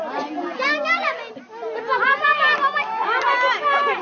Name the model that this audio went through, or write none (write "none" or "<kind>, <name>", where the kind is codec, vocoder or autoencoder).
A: none